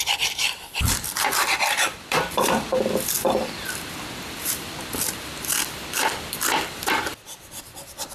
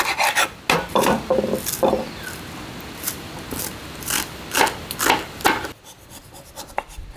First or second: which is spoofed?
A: first